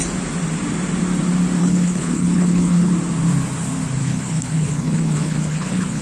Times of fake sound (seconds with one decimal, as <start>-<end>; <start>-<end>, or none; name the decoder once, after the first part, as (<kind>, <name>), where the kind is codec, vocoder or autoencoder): 1.6-2.9 (codec, HILCodec); 4.0-6.0